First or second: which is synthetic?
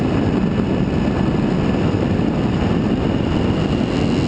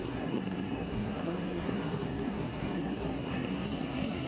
second